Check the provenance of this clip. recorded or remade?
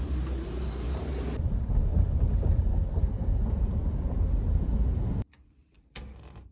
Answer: remade